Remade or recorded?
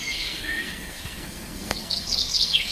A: remade